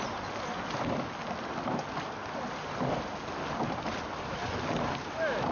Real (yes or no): yes